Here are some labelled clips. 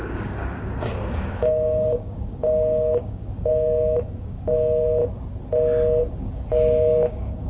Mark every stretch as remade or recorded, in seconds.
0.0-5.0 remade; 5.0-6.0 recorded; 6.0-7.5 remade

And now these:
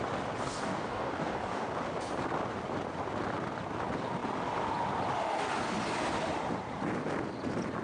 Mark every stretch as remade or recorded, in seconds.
0.0-0.4 recorded; 0.4-1.7 remade; 1.7-7.8 recorded

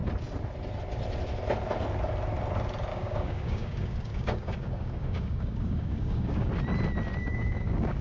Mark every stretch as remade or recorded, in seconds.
0.0-2.9 recorded; 2.9-6.5 remade; 6.5-7.2 recorded; 7.2-8.0 remade

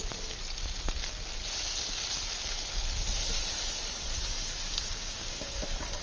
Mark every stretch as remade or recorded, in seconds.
0.0-4.8 recorded; 4.8-5.6 remade; 5.6-6.0 recorded

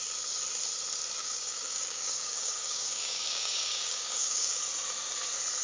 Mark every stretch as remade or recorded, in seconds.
0.0-1.2 recorded; 1.2-4.6 remade; 4.6-5.6 recorded